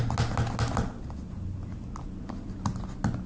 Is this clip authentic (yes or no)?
yes